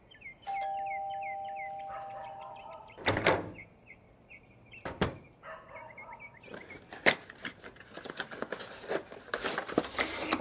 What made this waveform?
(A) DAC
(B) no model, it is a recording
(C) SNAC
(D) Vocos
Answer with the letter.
B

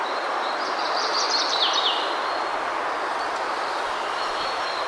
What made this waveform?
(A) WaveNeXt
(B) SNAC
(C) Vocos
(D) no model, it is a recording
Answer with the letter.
D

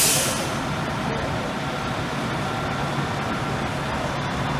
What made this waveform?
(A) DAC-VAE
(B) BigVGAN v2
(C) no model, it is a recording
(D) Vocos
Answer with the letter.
C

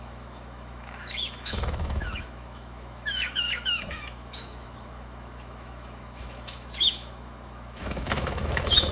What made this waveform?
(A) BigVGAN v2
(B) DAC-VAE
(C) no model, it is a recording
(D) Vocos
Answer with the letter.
B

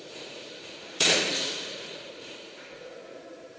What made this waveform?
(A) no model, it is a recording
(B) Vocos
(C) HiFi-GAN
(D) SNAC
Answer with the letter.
B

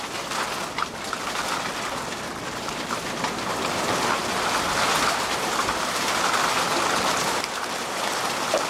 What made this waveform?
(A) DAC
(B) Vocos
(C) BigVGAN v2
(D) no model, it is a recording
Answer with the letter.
D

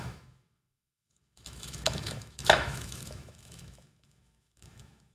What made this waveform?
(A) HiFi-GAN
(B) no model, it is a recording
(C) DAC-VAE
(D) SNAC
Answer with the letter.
C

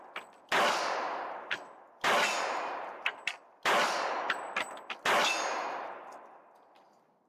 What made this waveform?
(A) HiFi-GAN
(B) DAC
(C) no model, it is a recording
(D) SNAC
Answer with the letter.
C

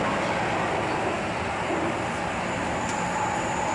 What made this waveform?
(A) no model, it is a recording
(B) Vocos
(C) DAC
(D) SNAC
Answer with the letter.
A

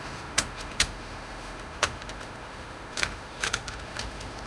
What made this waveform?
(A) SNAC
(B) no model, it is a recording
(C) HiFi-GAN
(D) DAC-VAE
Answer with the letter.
D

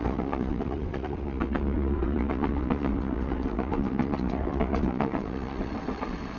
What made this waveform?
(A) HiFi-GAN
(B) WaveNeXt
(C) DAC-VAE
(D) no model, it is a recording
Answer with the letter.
B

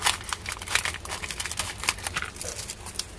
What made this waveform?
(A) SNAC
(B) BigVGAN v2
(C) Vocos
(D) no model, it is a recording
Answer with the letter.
D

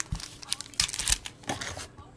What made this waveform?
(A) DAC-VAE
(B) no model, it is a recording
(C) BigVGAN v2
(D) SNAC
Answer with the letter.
B